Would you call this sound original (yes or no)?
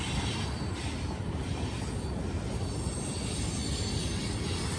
yes